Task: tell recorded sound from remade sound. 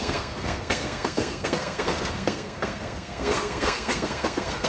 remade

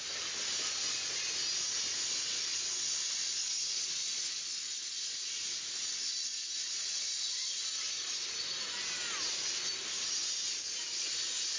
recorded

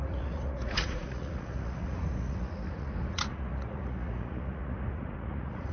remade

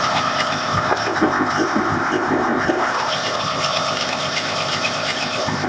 remade